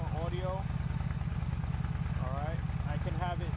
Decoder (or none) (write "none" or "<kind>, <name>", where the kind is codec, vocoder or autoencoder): none